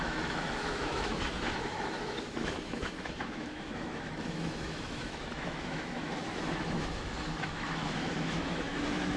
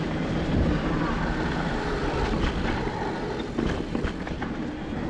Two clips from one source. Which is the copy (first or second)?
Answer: first